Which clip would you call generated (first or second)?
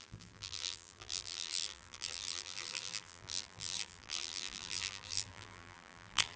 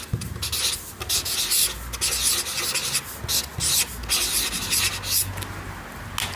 first